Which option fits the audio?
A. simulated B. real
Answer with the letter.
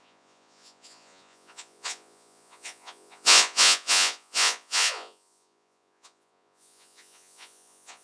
A